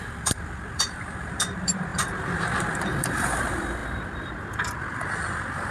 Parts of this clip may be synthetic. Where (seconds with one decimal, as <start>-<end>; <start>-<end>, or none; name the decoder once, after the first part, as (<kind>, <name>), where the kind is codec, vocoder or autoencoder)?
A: 0.0-3.8 (vocoder, BigVGAN v2); 4.8-5.7